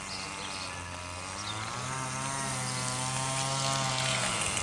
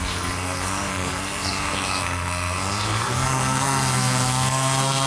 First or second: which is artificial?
second